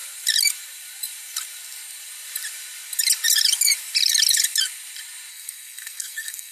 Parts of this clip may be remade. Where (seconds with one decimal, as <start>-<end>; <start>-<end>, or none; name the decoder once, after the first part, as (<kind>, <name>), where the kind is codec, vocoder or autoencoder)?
5.3-6.5 (codec, SNAC)